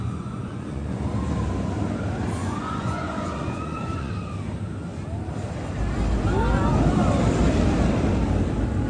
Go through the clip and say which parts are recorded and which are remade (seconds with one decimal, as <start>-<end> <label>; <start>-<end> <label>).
0.0-1.0 remade; 1.0-2.4 recorded; 2.4-4.1 remade; 4.1-8.9 recorded